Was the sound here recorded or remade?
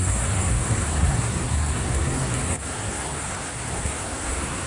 remade